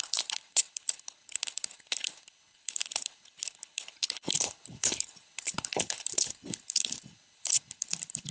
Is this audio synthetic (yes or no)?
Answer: yes